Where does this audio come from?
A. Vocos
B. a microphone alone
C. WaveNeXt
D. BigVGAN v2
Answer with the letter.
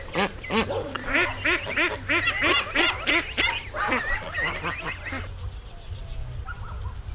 B